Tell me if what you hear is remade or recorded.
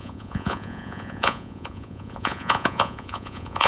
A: remade